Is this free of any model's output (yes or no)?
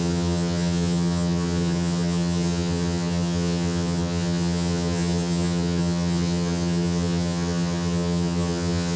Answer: no